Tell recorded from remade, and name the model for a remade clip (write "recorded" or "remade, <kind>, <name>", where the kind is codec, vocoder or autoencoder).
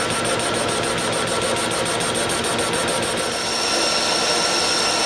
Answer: recorded